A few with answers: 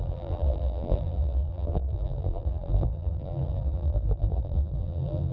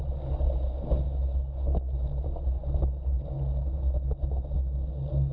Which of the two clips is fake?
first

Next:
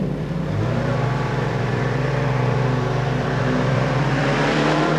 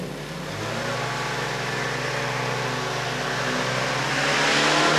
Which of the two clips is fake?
first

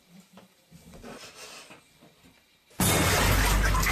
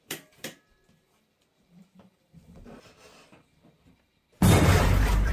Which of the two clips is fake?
second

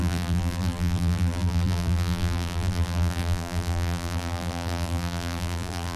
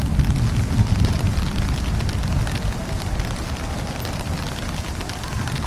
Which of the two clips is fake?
first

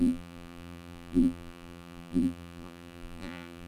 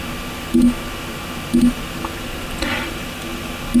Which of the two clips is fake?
first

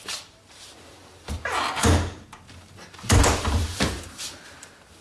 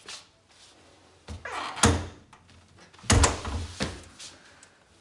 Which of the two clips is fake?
first